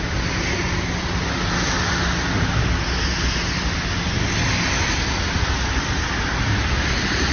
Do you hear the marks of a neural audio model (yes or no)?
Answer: no